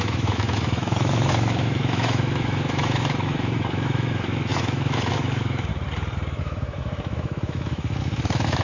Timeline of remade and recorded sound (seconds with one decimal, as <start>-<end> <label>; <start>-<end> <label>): 0.0-5.7 remade; 5.7-6.4 recorded; 6.4-8.6 remade